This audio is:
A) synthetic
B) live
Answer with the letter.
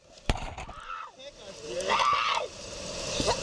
B